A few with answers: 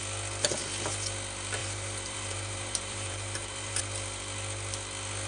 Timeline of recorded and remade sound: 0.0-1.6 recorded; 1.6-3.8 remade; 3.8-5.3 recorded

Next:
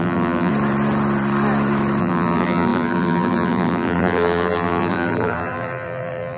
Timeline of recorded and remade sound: 0.0-0.5 remade; 0.5-2.0 recorded; 2.0-6.4 remade

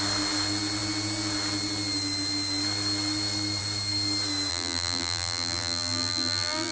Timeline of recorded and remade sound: 0.0-4.5 recorded; 4.5-6.7 remade

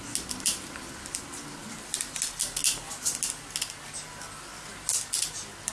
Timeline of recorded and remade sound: 0.0-5.7 recorded

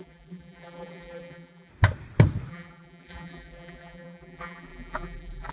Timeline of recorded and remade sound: 0.0-1.7 remade; 1.7-2.5 recorded; 2.5-5.5 remade

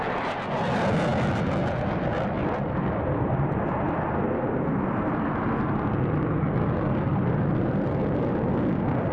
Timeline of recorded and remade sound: 0.0-9.1 recorded

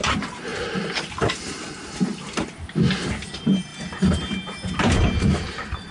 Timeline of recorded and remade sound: 0.0-5.9 recorded